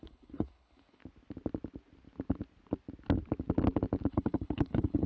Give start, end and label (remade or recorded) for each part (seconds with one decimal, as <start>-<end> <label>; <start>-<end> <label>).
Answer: 0.0-1.0 remade; 1.0-4.1 recorded; 4.1-5.1 remade